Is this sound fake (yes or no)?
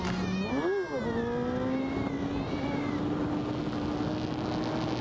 no